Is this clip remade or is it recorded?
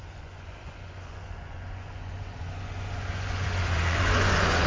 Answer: remade